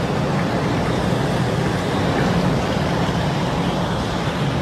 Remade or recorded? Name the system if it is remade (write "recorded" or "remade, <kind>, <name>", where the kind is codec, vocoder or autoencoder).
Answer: recorded